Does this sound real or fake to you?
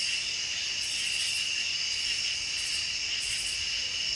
real